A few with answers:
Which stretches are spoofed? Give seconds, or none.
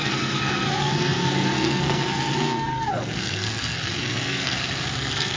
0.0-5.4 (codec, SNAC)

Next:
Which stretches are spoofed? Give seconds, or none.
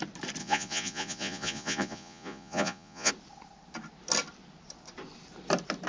0.4-3.1 (vocoder, Vocos)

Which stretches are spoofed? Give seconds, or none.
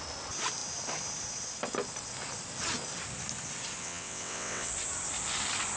3.8-4.7 (vocoder, WaveNeXt)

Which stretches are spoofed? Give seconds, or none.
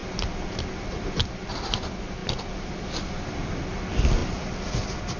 2.2-3.6 (vocoder, BigVGAN v2); 4.2-5.2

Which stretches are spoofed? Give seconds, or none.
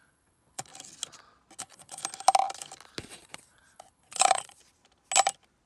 0.0-0.7 (vocoder, Vocos); 1.6-2.0; 3.0-4.6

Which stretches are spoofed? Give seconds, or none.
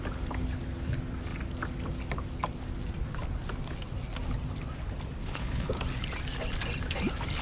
5.2-5.7 (codec, HILCodec)